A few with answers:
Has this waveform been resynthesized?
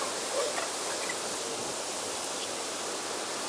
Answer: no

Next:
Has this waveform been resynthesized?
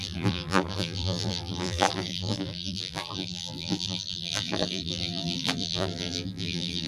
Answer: yes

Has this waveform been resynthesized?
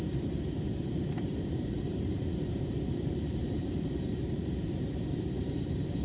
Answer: yes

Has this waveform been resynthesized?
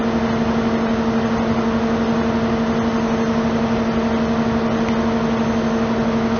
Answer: no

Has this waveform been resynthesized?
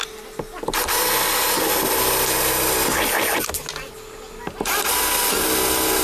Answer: no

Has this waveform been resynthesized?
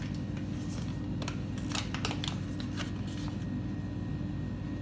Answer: no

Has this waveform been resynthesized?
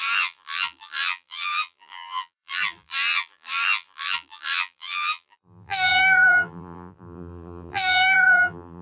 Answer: yes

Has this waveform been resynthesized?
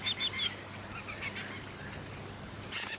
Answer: no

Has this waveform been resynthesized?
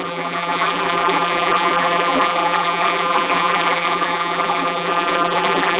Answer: yes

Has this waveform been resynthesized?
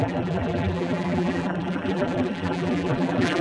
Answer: yes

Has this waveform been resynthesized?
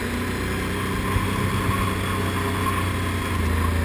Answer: no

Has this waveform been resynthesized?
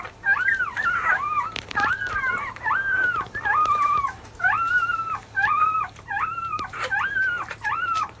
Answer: yes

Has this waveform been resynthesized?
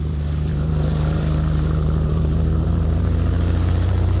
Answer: yes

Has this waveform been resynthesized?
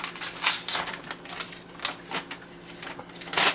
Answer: no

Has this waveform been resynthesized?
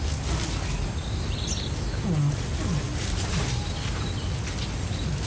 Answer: no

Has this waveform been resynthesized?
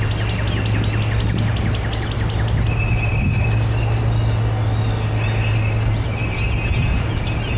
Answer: yes